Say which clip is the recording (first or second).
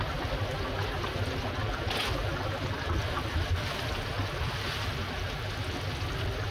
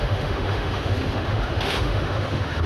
first